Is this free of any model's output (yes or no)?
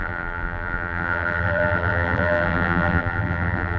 no